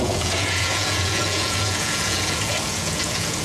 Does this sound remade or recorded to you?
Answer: remade